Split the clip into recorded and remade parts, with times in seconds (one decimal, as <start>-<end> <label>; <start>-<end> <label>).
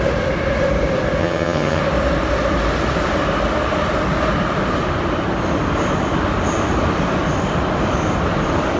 0.0-1.2 recorded; 1.2-1.8 remade; 1.8-8.8 recorded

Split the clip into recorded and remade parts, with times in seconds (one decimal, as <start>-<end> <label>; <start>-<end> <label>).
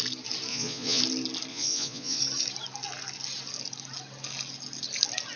0.0-0.5 recorded; 0.5-1.0 remade; 1.0-1.5 recorded; 1.5-2.2 remade; 2.2-5.4 recorded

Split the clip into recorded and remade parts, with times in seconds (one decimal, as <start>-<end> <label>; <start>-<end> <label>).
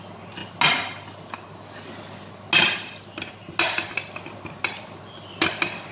0.0-5.9 recorded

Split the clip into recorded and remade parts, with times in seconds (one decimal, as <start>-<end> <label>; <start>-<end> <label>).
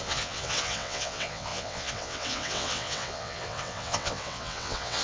0.0-5.0 remade